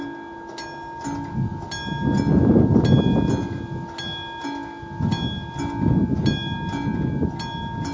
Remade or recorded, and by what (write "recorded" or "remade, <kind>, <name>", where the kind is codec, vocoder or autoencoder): recorded